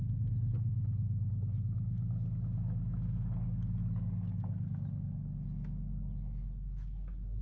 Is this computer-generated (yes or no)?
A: no